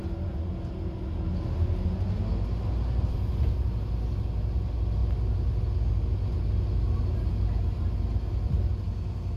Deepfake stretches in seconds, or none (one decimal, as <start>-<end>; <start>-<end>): none